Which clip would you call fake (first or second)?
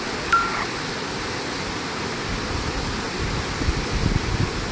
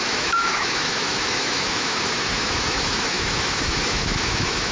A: second